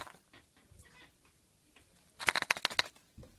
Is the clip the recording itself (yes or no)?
yes